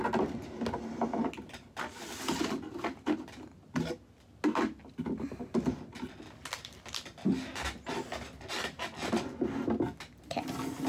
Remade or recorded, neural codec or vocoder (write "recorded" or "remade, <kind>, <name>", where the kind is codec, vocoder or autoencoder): recorded